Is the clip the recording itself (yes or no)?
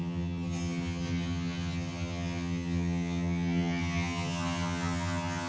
no